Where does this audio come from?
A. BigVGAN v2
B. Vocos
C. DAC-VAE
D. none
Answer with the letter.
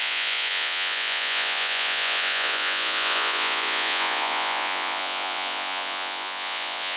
B